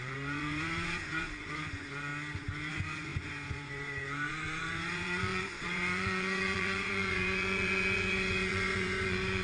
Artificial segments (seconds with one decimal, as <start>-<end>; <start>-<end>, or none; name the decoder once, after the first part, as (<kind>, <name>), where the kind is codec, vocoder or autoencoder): 0.0-2.1 (vocoder, Vocos); 2.7-9.4